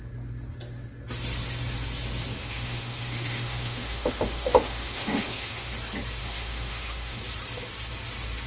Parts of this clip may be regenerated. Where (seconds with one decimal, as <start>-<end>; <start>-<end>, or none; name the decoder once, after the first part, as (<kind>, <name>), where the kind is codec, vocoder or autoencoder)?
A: 2.4-5.7 (autoencoder, DAC-VAE); 6.2-7.2